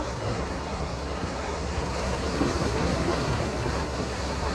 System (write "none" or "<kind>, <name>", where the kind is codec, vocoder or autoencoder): codec, SNAC